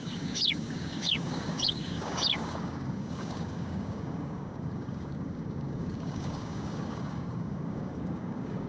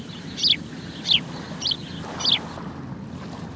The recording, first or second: second